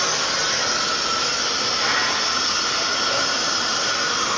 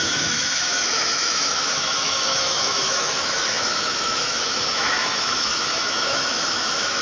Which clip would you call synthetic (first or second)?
second